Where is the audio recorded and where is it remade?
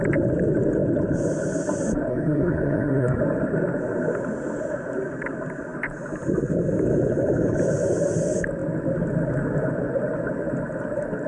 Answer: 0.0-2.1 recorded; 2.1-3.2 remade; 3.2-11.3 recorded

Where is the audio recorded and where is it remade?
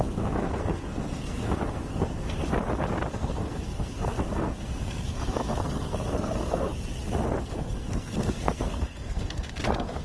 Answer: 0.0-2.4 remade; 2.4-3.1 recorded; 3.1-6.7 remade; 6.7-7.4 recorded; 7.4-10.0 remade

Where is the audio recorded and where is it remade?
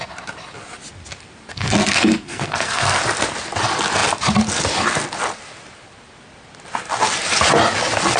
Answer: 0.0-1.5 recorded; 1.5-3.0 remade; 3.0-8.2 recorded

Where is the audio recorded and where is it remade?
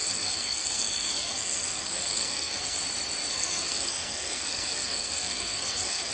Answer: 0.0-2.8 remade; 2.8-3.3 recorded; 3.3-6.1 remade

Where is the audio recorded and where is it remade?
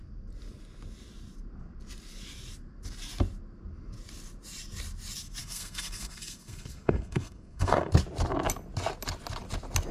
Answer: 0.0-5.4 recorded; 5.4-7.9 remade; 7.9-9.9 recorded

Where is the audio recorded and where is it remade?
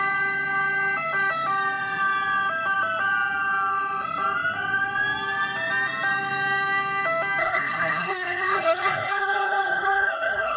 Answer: 0.0-7.4 recorded; 7.4-10.6 remade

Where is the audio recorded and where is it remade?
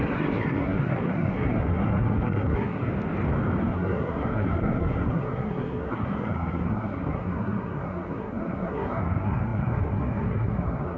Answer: 0.0-2.9 remade; 2.9-3.6 recorded; 3.6-11.0 remade